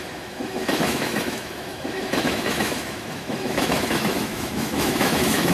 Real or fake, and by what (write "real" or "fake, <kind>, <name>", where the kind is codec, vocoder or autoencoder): fake, autoencoder, DAC-VAE